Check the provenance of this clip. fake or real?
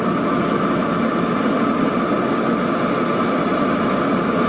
real